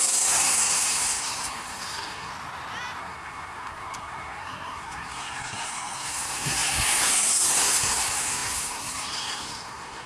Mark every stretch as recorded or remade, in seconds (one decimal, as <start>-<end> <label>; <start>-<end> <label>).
0.0-2.3 remade; 2.3-3.0 recorded; 3.0-10.1 remade